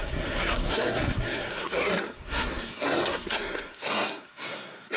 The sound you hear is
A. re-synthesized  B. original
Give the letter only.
A